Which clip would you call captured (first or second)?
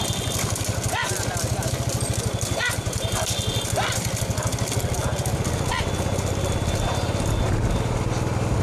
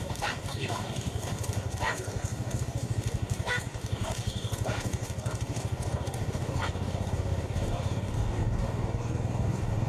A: first